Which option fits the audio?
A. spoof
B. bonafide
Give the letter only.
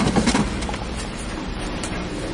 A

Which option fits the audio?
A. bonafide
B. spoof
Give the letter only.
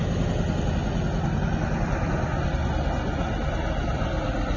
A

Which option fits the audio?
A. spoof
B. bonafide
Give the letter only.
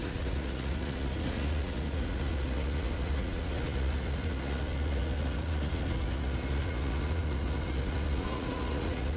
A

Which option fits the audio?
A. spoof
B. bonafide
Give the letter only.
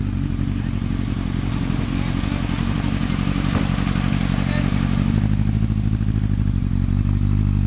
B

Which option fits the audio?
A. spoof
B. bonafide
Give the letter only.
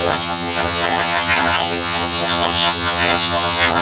A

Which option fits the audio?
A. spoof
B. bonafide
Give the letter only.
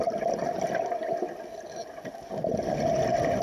B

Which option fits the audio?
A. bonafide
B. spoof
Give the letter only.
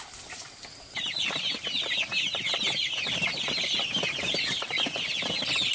A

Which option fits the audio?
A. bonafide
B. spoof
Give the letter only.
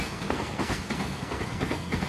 B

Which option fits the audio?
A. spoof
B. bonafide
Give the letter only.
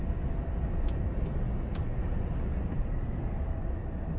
B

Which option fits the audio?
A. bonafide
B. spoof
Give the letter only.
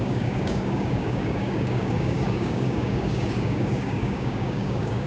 B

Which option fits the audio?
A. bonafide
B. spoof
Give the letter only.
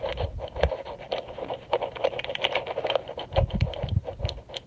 A